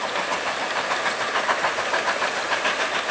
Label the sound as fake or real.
real